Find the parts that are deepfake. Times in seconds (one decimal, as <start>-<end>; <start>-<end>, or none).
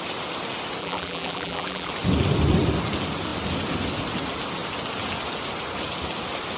0.8-1.9